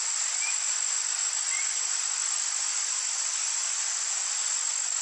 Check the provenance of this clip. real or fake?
real